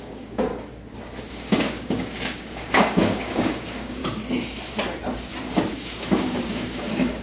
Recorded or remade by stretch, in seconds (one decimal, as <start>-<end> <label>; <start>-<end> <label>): 0.0-0.5 remade; 0.5-1.3 recorded; 1.3-4.0 remade; 4.0-5.7 recorded; 5.7-7.2 remade